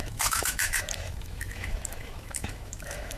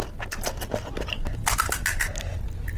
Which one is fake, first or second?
first